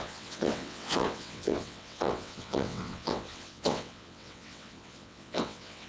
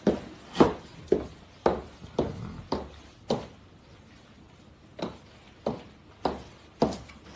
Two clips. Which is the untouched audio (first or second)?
second